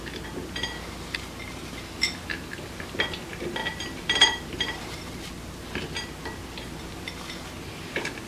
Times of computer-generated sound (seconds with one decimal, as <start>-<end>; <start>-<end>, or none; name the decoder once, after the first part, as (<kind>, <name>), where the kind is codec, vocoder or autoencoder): 3.6-5.1 (vocoder, BigVGAN v2)